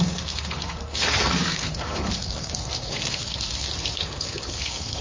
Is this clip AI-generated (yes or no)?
yes